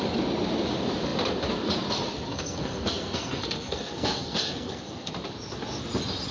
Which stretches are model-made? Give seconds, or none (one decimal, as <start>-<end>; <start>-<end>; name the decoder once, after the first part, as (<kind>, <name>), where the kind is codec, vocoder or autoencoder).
2.3-5.1 (codec, SNAC)

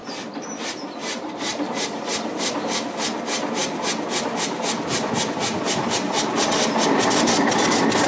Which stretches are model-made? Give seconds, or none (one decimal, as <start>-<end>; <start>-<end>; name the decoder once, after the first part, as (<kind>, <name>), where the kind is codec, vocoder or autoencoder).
0.0-2.0 (vocoder, BigVGAN v2)